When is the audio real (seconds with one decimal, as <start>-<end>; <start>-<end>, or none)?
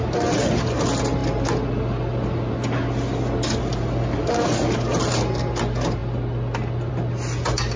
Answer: 0.0-7.8